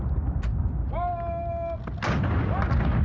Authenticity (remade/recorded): recorded